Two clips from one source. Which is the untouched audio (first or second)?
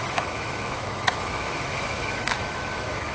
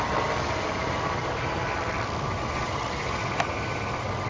second